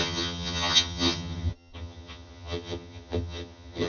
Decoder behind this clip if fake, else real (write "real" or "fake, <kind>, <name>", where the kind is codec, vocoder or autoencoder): fake, vocoder, HiFi-GAN